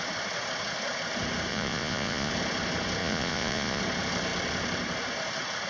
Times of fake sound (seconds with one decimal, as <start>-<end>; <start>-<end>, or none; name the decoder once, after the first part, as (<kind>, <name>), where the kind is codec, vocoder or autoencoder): 1.5-2.3 (vocoder, Vocos); 3.0-3.8